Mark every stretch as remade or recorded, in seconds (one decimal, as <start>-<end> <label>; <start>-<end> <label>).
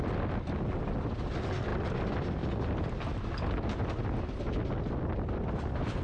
0.0-6.0 recorded